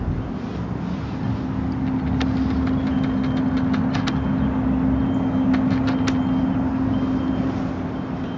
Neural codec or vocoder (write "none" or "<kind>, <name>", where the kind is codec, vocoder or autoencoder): none